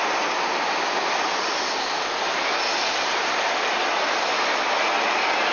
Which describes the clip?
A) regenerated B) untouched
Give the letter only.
B